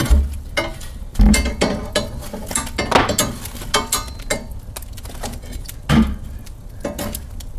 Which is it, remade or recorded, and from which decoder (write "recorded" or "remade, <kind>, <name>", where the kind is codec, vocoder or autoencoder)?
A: recorded